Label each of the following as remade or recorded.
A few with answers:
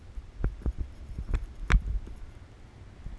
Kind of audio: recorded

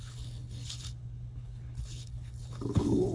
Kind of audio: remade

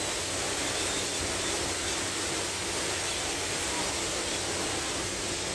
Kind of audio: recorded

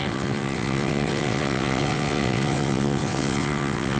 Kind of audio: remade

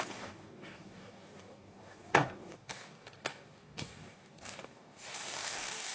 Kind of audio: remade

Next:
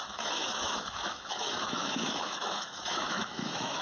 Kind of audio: remade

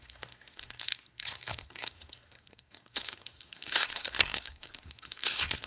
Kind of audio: remade